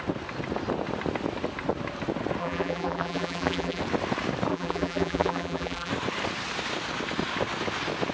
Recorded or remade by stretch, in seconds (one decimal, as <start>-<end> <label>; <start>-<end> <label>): 0.0-2.4 recorded; 2.4-3.8 remade; 3.8-4.5 recorded; 4.5-5.9 remade; 5.9-8.1 recorded